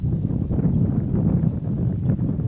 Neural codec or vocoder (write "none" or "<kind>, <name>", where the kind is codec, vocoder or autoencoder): none